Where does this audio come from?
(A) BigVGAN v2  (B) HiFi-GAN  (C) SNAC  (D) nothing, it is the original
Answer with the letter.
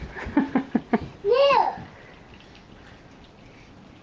D